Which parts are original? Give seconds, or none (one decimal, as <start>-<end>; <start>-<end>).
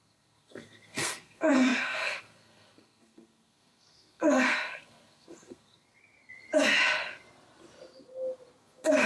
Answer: 6.0-8.6